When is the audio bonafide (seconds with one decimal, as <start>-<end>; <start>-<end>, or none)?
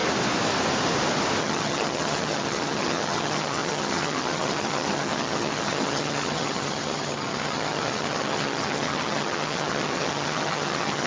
0.0-1.4